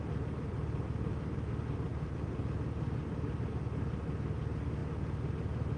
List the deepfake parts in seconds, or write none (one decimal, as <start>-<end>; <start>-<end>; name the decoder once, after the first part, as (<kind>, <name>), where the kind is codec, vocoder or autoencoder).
none